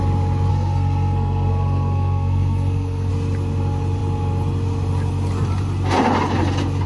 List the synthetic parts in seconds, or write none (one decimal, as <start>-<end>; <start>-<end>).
0.5-3.1